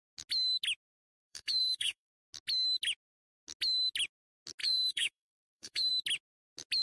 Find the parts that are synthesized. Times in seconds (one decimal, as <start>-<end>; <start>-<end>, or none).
1.1-2.1; 4.6-5.9